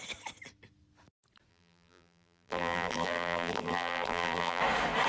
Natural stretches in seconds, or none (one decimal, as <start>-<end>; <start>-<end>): 0.0-1.5; 4.6-5.1